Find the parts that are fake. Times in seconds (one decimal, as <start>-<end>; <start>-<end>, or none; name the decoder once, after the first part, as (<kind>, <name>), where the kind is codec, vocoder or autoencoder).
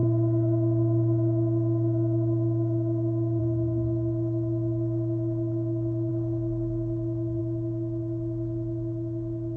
0.0-3.4 (autoencoder, DAC-VAE)